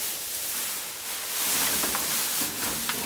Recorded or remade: recorded